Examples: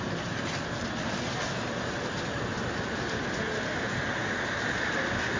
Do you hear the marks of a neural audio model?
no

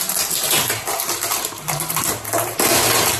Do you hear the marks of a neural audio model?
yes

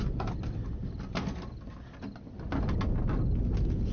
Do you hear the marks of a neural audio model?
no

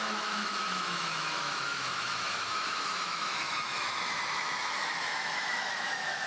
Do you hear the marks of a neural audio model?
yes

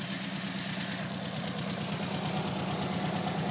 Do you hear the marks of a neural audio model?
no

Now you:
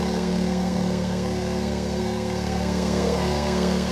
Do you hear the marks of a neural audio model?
yes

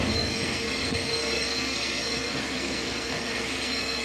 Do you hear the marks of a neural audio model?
yes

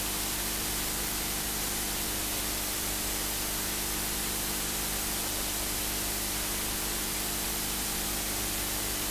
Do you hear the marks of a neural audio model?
yes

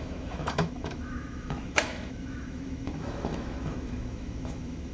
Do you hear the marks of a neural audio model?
yes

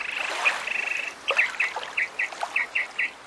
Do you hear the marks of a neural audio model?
no